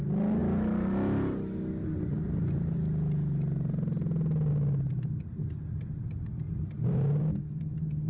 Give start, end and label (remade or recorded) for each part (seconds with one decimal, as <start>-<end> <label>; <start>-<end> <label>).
0.0-5.3 recorded; 5.3-8.1 remade